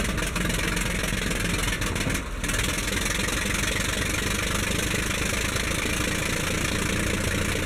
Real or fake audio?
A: real